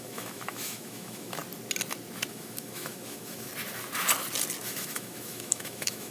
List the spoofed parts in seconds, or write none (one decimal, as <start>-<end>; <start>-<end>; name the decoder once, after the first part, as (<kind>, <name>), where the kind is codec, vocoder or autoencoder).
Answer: 0.0-1.4 (autoencoder, DAC-VAE); 2.3-3.5; 4.6-6.1